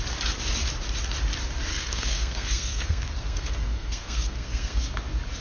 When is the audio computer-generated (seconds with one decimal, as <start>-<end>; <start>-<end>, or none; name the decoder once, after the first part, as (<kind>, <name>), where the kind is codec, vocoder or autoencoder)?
1.7-4.9 (codec, SNAC)